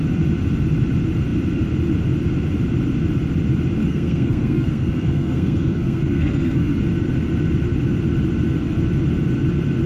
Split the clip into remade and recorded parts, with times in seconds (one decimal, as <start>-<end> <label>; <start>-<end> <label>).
0.0-3.8 recorded; 3.8-6.8 remade; 6.8-9.9 recorded